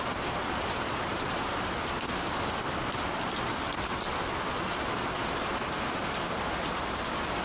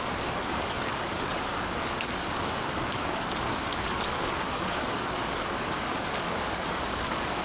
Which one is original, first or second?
first